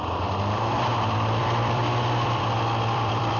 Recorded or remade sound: remade